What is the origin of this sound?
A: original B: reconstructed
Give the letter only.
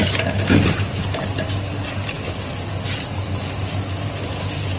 A